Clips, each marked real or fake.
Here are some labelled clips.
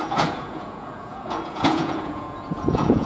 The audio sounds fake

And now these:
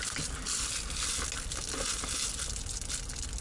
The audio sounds real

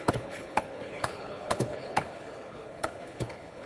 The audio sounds fake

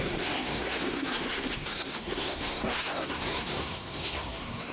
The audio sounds fake